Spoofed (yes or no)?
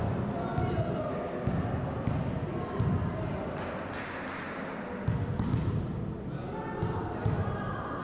no